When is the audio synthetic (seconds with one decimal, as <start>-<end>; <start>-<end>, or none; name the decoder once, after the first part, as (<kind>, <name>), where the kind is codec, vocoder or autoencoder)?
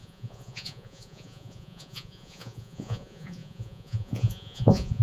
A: 0.0-5.0 (vocoder, Vocos)